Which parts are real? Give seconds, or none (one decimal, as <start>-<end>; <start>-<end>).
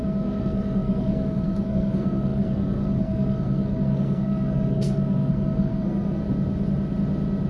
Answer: 6.2-7.5